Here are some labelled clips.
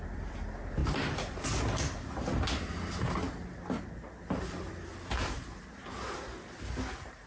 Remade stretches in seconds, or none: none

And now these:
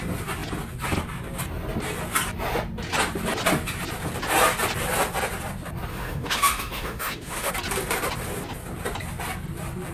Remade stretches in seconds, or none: 5.9-7.5 (autoencoder, DAC-VAE)